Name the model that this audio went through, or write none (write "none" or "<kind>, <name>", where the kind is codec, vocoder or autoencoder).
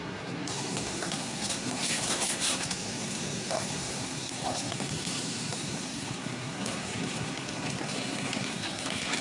codec, SNAC